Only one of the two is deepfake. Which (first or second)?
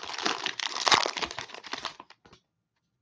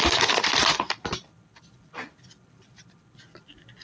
second